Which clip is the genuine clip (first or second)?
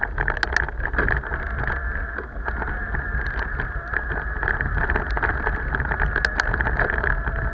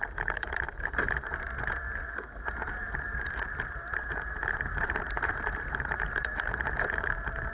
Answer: first